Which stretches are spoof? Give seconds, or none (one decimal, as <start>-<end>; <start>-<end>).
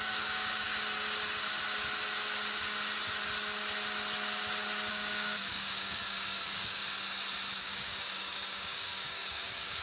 0.0-0.7; 4.9-6.8; 7.6-9.8